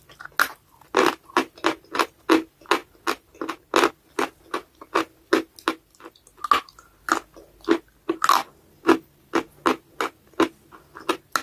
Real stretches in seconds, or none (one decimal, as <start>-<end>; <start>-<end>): 0.0-11.4